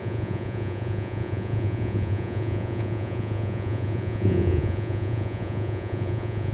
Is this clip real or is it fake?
fake